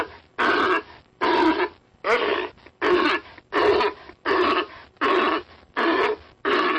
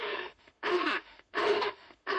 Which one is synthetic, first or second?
second